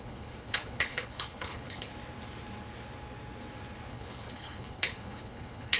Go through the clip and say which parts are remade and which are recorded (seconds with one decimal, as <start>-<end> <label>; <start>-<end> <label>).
0.0-1.9 remade; 1.9-3.9 recorded; 3.9-5.8 remade